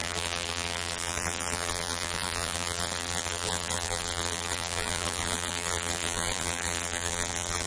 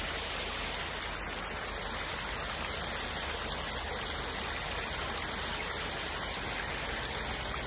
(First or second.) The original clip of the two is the second